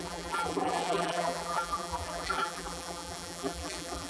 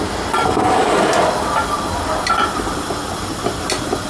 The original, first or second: second